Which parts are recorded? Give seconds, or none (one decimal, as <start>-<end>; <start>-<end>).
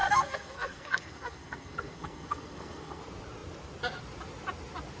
3.0-5.0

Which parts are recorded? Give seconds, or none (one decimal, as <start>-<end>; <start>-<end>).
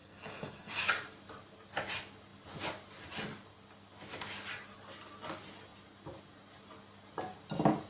0.8-7.9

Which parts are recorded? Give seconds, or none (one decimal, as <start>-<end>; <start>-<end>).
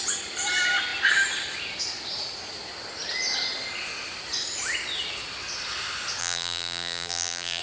0.0-6.2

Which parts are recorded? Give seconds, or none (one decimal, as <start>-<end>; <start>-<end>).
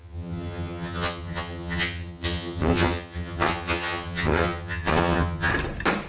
5.5-6.1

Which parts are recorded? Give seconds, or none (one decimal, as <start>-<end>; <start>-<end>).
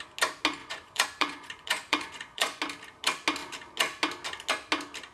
0.0-0.6; 2.6-5.1